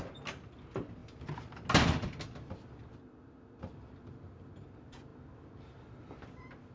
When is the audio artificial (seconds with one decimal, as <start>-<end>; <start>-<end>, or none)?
none